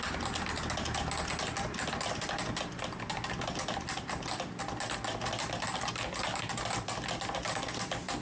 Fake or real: real